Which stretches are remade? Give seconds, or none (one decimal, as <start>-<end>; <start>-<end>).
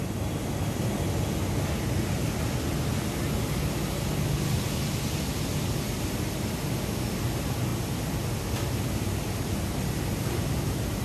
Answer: none